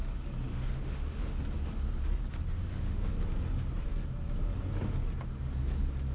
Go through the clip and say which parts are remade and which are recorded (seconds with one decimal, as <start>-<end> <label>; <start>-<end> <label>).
0.0-0.5 recorded; 0.5-1.4 remade; 1.4-2.6 recorded; 2.6-3.1 remade; 3.1-6.1 recorded